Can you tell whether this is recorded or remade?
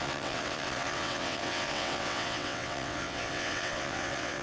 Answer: remade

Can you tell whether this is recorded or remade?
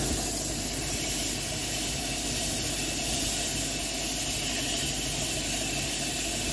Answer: recorded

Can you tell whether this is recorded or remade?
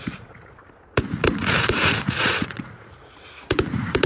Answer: remade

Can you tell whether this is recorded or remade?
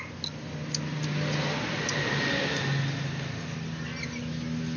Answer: recorded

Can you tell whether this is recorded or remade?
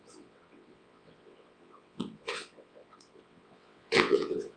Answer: remade